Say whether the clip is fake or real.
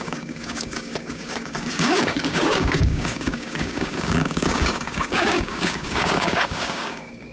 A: fake